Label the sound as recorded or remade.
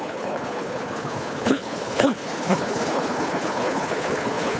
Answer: remade